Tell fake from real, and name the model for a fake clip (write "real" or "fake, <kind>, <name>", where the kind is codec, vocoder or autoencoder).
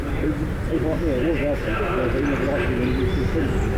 real